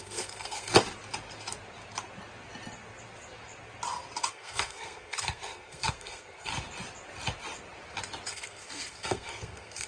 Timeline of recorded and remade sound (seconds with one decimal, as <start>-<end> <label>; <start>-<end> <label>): 0.0-0.7 remade; 0.7-4.3 recorded; 4.3-6.5 remade; 6.5-8.3 recorded; 8.3-9.9 remade